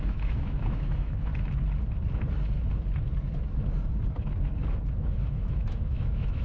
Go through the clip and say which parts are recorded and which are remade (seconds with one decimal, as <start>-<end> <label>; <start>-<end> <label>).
0.0-1.3 remade; 1.3-5.1 recorded; 5.1-6.4 remade